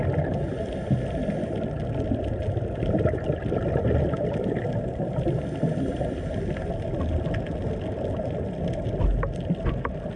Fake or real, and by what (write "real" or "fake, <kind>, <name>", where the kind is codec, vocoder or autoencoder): real